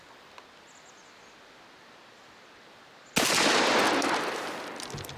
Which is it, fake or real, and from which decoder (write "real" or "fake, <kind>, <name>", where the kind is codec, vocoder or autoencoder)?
real